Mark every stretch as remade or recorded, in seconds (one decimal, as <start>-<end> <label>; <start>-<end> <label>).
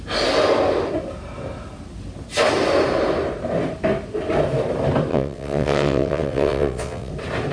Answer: 0.0-5.1 recorded; 5.1-7.1 remade; 7.1-7.5 recorded